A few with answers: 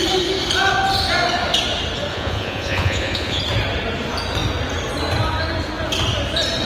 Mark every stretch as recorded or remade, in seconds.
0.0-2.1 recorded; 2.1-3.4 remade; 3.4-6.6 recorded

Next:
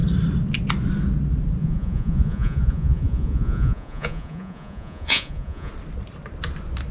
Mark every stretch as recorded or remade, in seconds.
0.0-1.6 recorded; 1.6-5.7 remade; 5.7-6.9 recorded

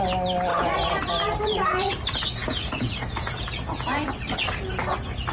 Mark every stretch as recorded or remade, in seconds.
0.0-0.5 recorded; 0.5-1.1 remade; 1.1-2.4 recorded; 2.4-4.1 remade; 4.1-5.3 recorded